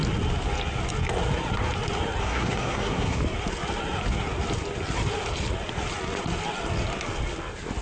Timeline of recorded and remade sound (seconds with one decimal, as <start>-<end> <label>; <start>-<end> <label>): 0.0-2.2 recorded; 2.2-3.2 remade; 3.2-7.8 recorded